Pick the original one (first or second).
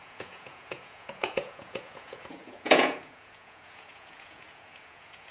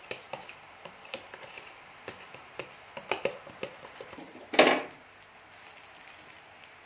second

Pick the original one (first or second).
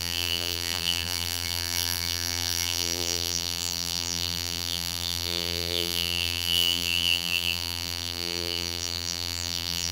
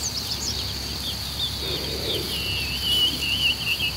second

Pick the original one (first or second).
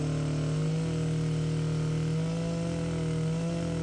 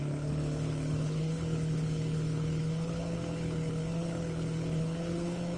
first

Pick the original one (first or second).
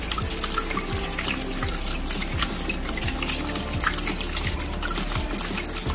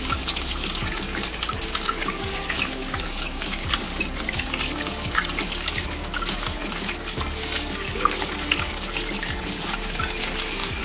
first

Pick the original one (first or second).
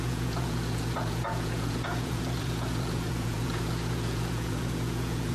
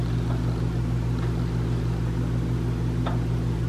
second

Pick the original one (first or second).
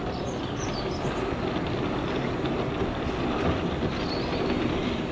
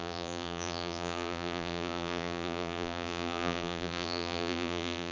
first